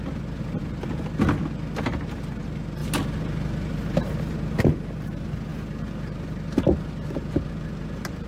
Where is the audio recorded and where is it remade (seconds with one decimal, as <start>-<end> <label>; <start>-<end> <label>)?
0.0-8.3 recorded